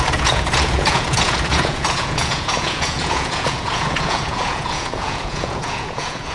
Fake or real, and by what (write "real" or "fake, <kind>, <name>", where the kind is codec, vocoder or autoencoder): fake, vocoder, Vocos